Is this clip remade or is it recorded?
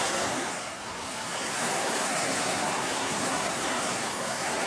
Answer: remade